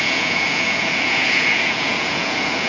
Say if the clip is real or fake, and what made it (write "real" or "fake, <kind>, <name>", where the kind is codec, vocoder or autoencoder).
fake, vocoder, Vocos